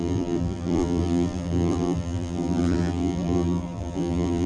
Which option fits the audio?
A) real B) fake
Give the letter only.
B